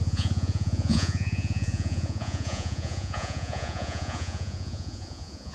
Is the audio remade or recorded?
remade